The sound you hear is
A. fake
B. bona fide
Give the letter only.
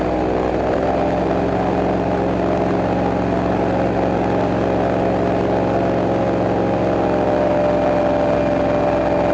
B